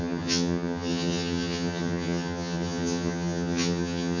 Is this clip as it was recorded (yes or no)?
no